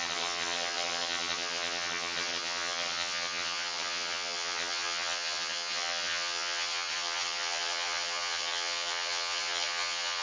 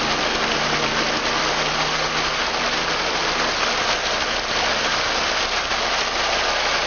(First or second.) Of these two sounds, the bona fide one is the second